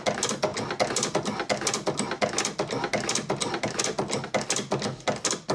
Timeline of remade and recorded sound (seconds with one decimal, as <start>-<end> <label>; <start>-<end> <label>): 0.0-5.5 recorded